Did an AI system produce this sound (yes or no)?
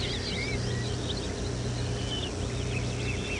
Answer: no